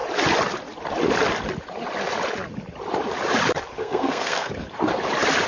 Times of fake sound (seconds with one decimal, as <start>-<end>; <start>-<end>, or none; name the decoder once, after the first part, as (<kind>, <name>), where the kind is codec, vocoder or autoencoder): 3.8-4.5 (codec, SNAC)